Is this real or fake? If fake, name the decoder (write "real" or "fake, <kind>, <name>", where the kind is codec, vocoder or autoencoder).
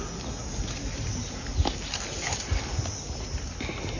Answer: real